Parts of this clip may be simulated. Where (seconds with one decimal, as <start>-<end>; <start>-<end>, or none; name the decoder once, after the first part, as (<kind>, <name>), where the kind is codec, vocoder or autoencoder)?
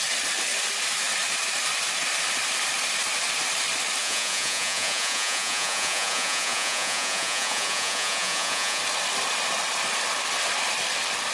4.0-8.8 (vocoder, Vocos)